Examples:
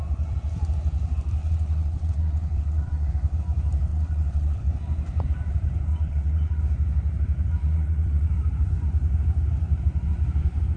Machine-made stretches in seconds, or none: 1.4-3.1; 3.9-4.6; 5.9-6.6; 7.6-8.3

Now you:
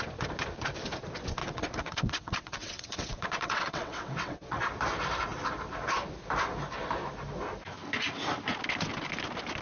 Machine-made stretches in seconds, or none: 1.4-4.6